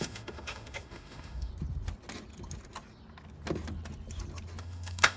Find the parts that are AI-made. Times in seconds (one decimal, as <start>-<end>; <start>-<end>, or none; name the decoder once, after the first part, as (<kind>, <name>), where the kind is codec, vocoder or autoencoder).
0.0-1.5 (autoencoder, DAC-VAE); 4.6-5.2